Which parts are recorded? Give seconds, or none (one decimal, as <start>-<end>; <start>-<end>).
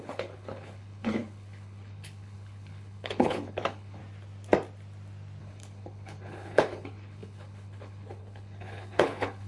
4.0-5.4